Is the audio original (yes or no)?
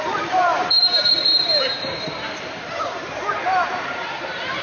no